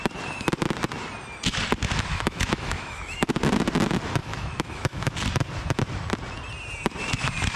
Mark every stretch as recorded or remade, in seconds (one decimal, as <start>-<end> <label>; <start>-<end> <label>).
0.0-2.1 recorded; 2.1-3.3 remade; 3.3-4.2 recorded; 4.2-5.1 remade; 5.1-7.6 recorded